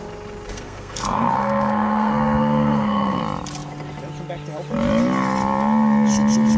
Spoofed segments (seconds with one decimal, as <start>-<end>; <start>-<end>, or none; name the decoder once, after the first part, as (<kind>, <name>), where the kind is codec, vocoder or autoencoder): 0.5-3.2 (codec, SNAC)